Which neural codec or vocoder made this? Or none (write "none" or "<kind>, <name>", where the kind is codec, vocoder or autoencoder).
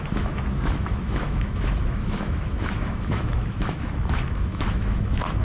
autoencoder, DAC-VAE